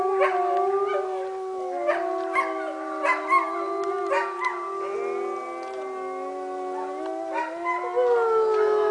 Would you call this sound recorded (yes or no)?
yes